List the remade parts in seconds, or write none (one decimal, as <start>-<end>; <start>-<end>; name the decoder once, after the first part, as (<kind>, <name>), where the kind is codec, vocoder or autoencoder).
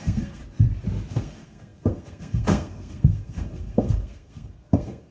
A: 0.0-0.4 (codec, SNAC); 1.1-5.1